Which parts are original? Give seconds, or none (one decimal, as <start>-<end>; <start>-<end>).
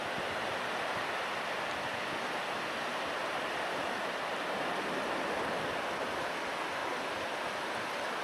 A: 6.8-7.7